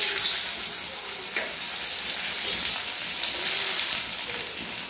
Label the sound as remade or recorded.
recorded